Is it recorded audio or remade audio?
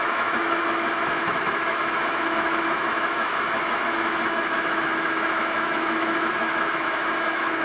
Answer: remade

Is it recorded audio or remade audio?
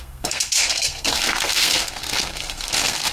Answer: remade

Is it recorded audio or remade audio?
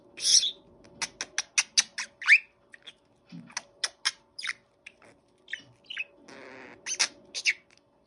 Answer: recorded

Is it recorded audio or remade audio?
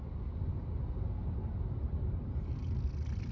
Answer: recorded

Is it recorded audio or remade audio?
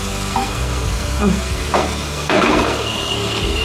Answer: remade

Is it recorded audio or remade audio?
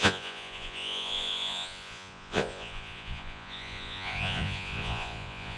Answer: remade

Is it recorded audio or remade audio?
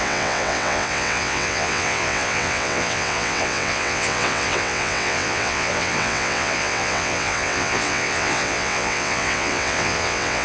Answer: remade